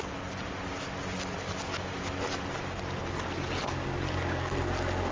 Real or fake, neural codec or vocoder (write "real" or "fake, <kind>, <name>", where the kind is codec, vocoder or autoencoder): real